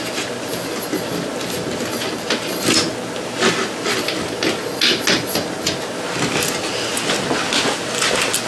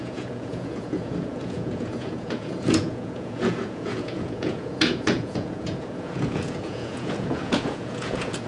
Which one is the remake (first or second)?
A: second